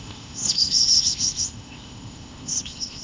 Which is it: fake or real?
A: fake